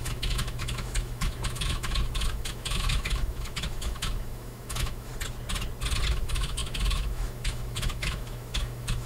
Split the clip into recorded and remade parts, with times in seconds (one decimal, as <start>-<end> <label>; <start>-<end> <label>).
0.0-5.1 remade; 5.1-6.1 recorded; 6.1-9.1 remade